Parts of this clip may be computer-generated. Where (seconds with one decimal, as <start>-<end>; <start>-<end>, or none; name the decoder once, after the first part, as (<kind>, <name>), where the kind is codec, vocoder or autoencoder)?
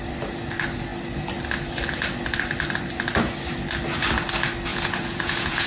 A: 4.7-5.7 (vocoder, Vocos)